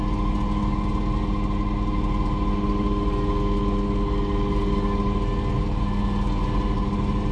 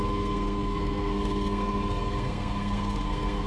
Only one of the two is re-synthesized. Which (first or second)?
second